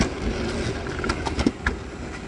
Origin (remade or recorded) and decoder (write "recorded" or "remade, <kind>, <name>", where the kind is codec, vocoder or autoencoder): recorded